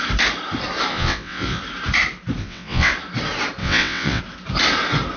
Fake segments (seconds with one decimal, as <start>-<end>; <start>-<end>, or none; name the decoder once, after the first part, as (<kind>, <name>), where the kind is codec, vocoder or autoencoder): 0.9-1.6 (vocoder, WaveNeXt); 2.4-2.9; 3.6-4.2